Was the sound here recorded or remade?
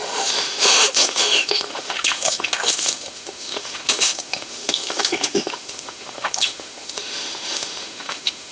remade